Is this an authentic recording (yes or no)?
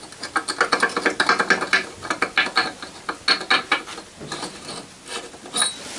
yes